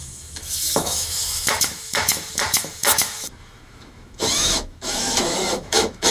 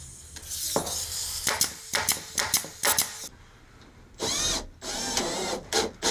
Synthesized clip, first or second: first